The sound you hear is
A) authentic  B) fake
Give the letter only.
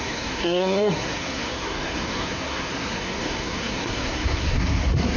B